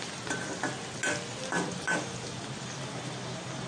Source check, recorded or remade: recorded